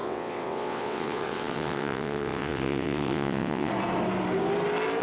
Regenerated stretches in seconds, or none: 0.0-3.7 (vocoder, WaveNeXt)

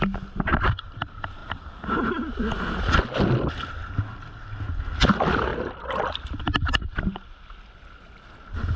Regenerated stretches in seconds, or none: none

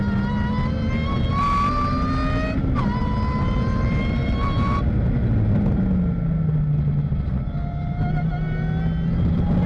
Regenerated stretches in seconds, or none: none

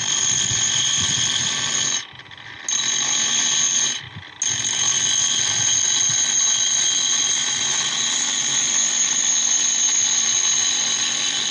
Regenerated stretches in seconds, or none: 0.0-1.5 (vocoder, BigVGAN v2)

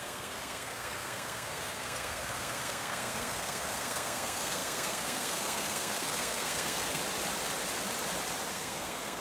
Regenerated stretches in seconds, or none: 0.0-7.0 (codec, SNAC); 8.5-9.2

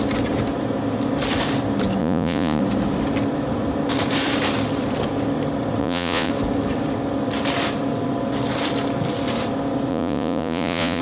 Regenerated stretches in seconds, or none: 2.0-2.6 (vocoder, Vocos); 5.8-6.3; 9.9-11.0